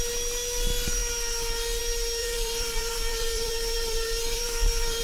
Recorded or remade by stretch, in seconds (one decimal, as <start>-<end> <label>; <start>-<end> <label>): 0.0-2.2 recorded; 2.2-5.0 remade